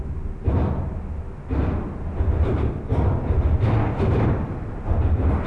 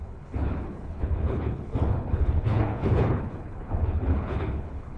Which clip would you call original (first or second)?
first